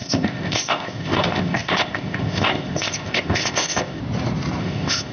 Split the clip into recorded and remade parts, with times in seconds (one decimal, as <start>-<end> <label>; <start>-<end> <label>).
0.0-4.0 remade; 4.0-4.6 recorded; 4.6-5.1 remade